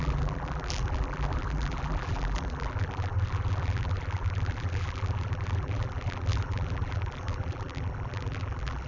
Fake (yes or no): yes